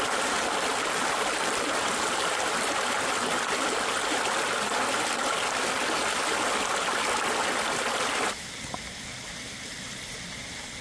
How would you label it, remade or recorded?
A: recorded